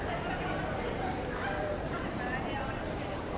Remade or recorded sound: remade